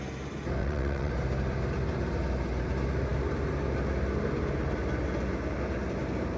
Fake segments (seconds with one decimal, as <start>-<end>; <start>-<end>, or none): 0.6-1.1